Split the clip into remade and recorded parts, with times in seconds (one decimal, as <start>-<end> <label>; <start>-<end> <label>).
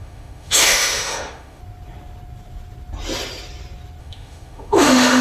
0.0-1.6 remade; 1.6-4.0 recorded; 4.0-5.2 remade